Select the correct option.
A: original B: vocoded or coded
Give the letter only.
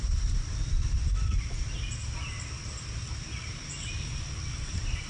A